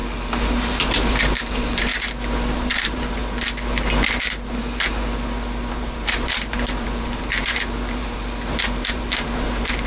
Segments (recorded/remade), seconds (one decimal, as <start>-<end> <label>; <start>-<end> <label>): 0.0-1.9 remade; 1.9-2.5 recorded; 2.5-3.2 remade; 3.2-5.7 recorded; 5.7-9.9 remade

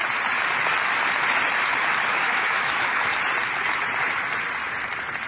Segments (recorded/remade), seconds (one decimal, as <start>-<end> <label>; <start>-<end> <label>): 0.0-2.1 recorded; 2.1-3.1 remade; 3.1-5.3 recorded

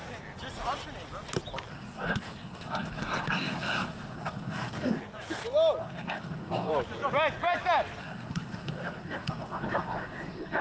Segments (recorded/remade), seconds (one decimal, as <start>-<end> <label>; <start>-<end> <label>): 0.0-1.7 recorded; 1.7-5.0 remade; 5.0-5.8 recorded; 5.8-6.7 remade; 6.7-8.0 recorded; 8.0-10.6 remade

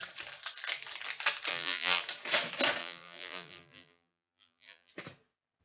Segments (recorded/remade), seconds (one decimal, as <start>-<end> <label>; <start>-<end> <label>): 0.0-1.5 recorded; 1.5-2.0 remade; 2.0-2.8 recorded; 2.8-4.9 remade; 4.9-5.6 recorded

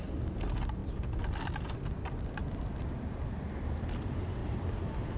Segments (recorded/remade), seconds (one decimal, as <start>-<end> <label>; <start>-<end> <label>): 0.0-0.8 recorded; 0.8-1.4 remade; 1.4-4.4 recorded; 4.4-5.2 remade

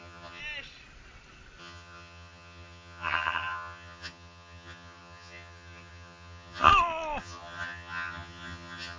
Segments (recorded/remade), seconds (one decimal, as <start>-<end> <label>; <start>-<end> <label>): 0.0-0.4 remade; 0.4-1.6 recorded; 1.6-6.7 remade; 6.7-7.2 recorded; 7.2-9.0 remade

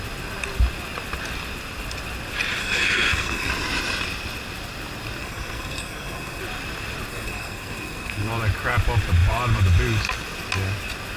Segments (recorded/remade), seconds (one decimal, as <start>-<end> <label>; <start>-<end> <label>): 0.0-2.6 recorded; 2.6-3.5 remade; 3.5-5.2 recorded; 5.2-6.4 remade; 6.4-7.1 recorded; 7.1-8.3 remade; 8.3-11.2 recorded

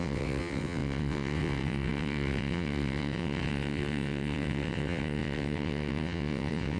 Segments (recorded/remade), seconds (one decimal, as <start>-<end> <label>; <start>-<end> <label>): 0.0-6.8 remade